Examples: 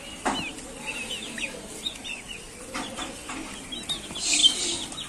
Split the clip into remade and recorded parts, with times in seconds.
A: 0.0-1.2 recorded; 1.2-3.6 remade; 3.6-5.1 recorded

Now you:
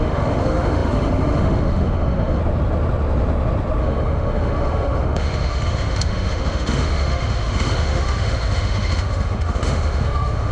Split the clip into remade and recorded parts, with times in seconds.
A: 0.0-2.4 remade; 2.4-3.8 recorded; 3.8-10.5 remade

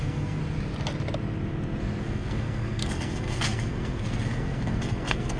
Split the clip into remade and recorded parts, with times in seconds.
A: 0.0-0.4 remade; 0.4-2.0 recorded; 2.0-5.4 remade

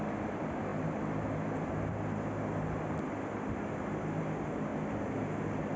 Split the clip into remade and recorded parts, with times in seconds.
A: 0.0-5.8 recorded

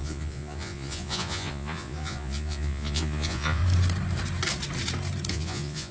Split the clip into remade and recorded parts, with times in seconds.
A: 0.0-3.6 remade; 3.6-5.3 recorded; 5.3-5.9 remade

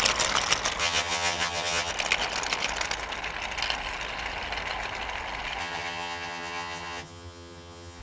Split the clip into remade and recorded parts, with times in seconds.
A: 0.0-0.8 recorded; 0.8-1.9 remade; 1.9-5.6 recorded; 5.6-8.0 remade